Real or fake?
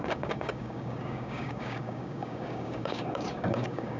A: fake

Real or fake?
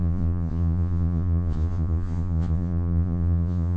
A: fake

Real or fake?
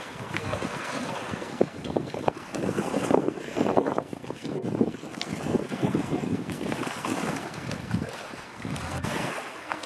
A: fake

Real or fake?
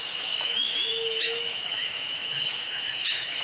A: fake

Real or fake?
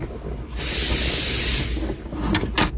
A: real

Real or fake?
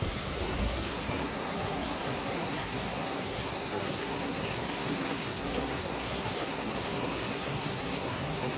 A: fake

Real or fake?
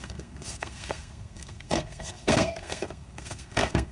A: fake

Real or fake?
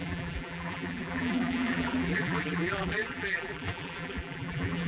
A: fake